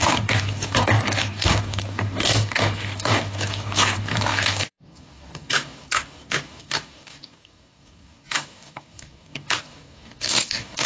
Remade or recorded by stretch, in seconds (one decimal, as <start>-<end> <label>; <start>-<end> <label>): 0.0-10.9 remade